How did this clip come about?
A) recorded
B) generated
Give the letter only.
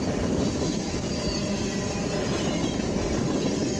A